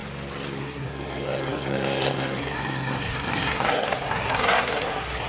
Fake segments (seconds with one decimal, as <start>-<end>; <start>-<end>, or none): 0.6-5.3